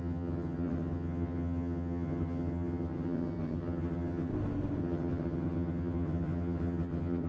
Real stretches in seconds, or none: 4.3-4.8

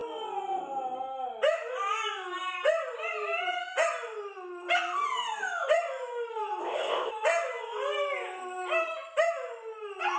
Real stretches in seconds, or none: 0.0-6.6; 7.1-10.2

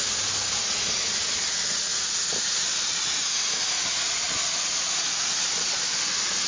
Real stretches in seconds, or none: 0.0-6.5

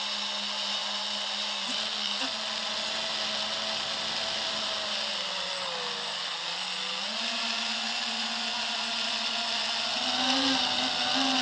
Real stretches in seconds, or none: 0.0-11.4

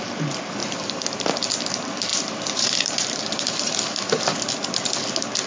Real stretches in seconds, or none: 0.0-0.6; 1.2-2.1; 3.5-5.5

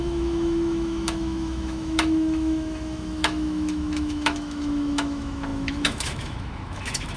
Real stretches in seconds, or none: none